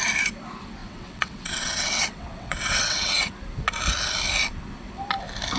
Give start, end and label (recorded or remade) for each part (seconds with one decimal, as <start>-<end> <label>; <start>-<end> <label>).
0.0-0.8 recorded; 0.8-3.3 remade; 3.3-5.6 recorded